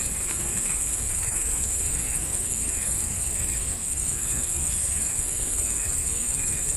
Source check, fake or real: fake